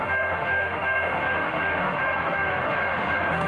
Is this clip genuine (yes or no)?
no